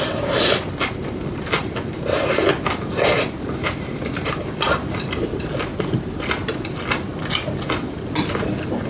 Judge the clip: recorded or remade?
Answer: recorded